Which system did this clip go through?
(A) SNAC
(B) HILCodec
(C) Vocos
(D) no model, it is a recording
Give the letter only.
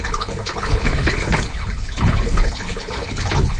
B